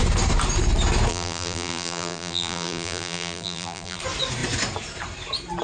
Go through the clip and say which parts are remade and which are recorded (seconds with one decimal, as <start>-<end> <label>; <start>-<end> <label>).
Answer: 0.0-1.1 recorded; 1.1-4.0 remade; 4.0-5.6 recorded